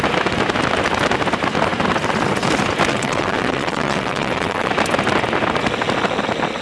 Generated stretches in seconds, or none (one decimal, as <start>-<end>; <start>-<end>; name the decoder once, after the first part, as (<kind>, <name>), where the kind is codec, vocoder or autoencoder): 2.9-4.7 (vocoder, WaveNeXt)